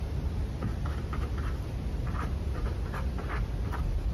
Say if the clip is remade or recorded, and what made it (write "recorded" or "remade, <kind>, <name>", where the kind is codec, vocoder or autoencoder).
recorded